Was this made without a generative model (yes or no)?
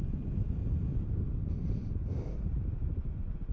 yes